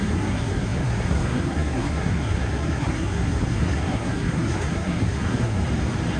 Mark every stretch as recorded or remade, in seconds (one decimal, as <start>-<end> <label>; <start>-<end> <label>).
0.0-5.6 remade; 5.6-6.2 recorded